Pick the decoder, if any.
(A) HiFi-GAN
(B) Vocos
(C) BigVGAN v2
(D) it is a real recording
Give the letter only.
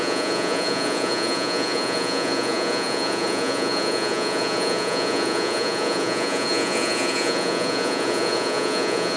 B